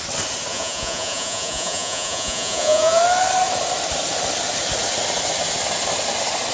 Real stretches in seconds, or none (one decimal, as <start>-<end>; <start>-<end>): 0.0-0.5; 3.0-6.5